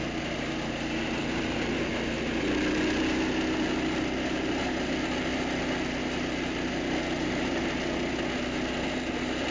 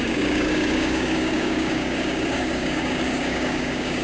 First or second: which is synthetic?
second